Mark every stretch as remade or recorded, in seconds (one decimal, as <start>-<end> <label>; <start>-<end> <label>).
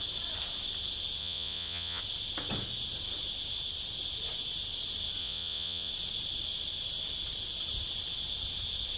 0.0-1.2 recorded; 1.2-2.0 remade; 2.0-5.2 recorded; 5.2-5.9 remade; 5.9-9.0 recorded